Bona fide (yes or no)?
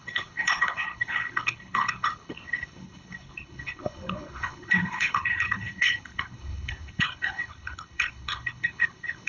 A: no